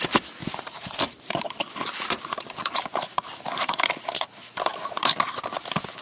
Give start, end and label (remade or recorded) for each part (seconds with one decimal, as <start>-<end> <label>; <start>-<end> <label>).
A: 0.0-0.4 recorded; 0.4-3.7 remade; 3.7-6.0 recorded